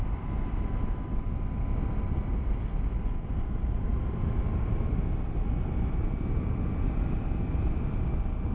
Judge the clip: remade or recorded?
recorded